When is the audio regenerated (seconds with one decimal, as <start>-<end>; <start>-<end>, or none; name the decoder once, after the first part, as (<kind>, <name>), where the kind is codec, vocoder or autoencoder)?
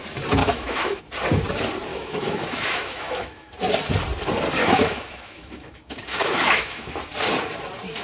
0.4-1.0 (autoencoder, DAC-VAE); 1.9-3.5; 4.6-6.9